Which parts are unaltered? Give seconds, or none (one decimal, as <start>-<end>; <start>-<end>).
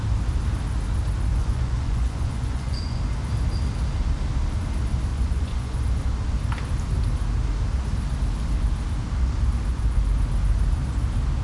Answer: 0.0-1.3; 3.0-5.1; 5.8-9.7; 10.2-11.4